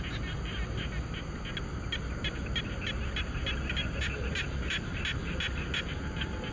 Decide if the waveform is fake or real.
real